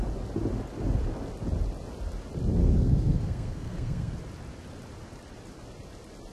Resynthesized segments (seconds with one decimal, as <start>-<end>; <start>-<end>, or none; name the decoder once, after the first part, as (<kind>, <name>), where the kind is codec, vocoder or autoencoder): 2.6-4.1 (codec, SNAC)